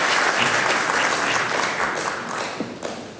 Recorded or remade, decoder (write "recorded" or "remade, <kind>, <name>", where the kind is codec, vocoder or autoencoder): recorded